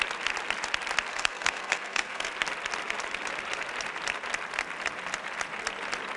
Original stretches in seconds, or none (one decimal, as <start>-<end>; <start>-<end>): 0.0-1.1; 2.3-6.2